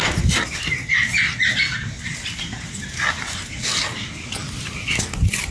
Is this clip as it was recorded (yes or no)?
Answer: yes